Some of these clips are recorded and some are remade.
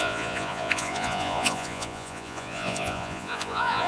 remade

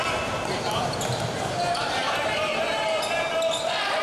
recorded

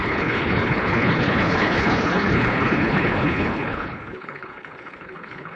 remade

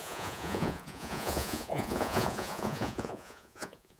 remade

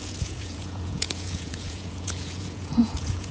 remade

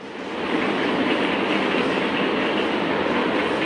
recorded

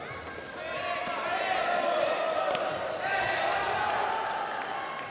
recorded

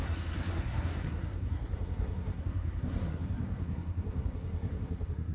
remade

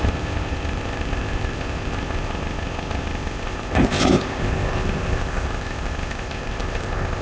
remade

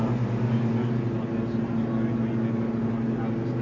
recorded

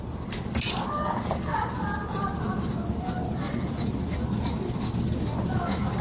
recorded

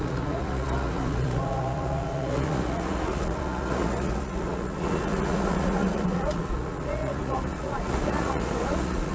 remade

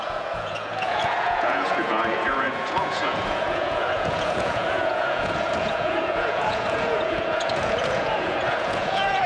remade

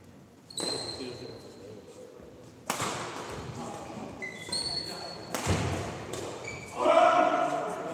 recorded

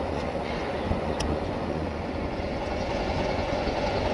remade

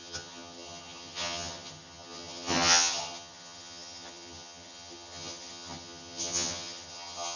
remade